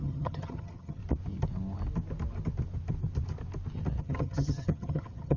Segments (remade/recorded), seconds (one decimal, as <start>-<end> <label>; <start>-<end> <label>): 0.0-1.0 remade; 1.0-4.0 recorded; 4.0-5.4 remade